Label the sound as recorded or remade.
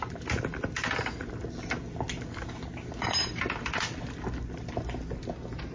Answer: recorded